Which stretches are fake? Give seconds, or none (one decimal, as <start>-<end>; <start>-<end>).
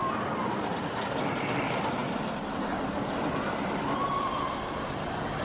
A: none